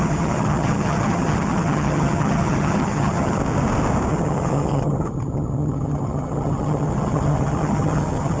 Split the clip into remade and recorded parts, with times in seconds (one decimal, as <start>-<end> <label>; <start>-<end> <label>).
0.0-3.4 remade; 3.4-4.1 recorded; 4.1-8.4 remade